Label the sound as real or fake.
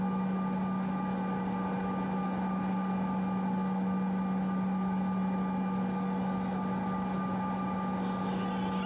real